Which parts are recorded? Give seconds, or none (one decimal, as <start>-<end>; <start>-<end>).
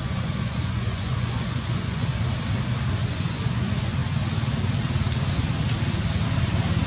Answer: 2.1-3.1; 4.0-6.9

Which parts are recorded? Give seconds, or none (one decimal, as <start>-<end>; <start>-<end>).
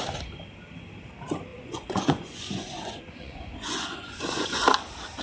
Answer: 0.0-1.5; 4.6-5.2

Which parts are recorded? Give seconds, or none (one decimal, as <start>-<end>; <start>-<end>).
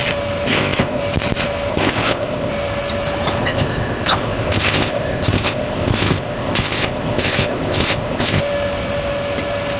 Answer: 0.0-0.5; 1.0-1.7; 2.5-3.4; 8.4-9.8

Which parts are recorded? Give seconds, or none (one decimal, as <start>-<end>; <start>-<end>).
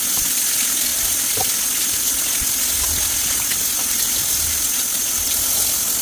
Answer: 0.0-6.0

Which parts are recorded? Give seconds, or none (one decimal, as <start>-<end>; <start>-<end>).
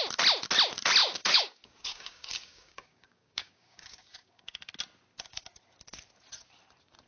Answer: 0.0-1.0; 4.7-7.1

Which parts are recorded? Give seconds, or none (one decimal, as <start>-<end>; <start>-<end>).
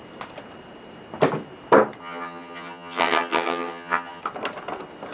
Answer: 0.0-2.0; 4.2-5.1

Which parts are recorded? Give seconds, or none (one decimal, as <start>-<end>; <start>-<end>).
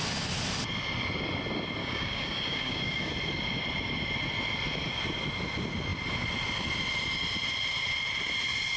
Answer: 0.0-1.8; 3.1-8.8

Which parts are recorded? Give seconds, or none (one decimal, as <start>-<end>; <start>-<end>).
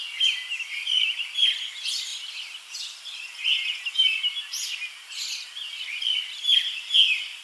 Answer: 0.0-7.4